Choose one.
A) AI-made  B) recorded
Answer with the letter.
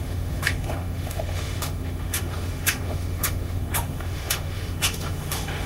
A